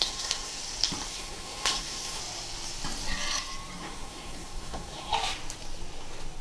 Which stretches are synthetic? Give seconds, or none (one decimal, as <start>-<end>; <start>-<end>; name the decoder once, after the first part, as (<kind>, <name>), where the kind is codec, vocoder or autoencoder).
0.0-0.6 (codec, SNAC); 1.1-2.2; 3.8-5.1